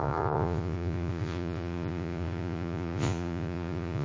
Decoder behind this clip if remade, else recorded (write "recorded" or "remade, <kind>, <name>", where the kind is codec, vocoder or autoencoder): remade, vocoder, Vocos